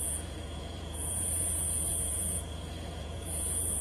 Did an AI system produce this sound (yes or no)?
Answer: yes